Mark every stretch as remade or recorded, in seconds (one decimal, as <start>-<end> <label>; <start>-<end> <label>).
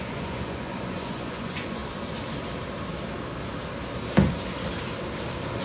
0.0-1.8 remade; 1.8-5.6 recorded